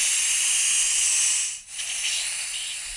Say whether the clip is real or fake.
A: real